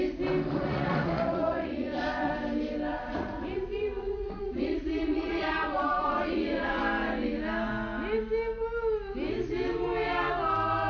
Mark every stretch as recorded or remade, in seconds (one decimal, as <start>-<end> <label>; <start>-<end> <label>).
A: 0.0-0.5 recorded; 0.5-2.3 remade; 2.3-2.9 recorded; 2.9-6.8 remade; 6.8-10.9 recorded